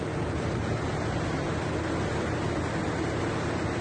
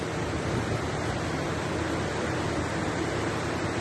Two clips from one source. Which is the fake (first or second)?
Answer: second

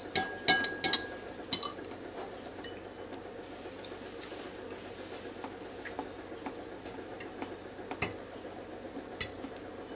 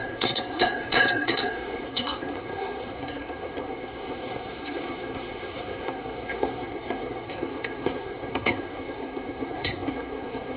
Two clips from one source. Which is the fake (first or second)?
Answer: second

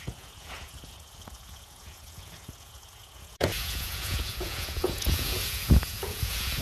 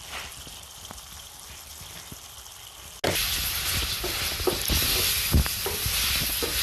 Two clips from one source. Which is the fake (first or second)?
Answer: first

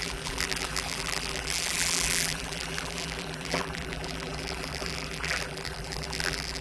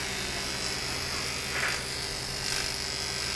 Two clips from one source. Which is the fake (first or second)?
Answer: first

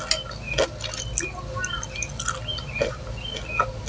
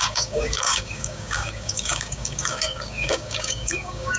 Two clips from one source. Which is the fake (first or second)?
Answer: second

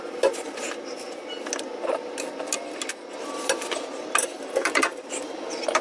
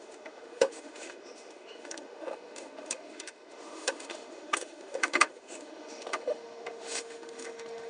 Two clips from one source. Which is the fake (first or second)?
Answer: second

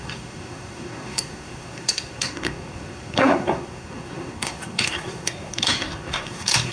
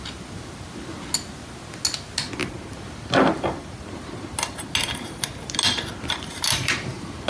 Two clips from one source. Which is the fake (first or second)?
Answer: first